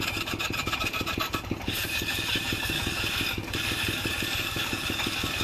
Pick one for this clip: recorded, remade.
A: remade